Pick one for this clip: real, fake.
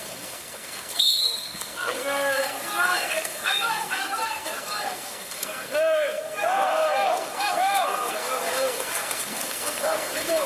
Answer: fake